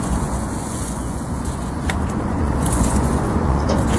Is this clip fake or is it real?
fake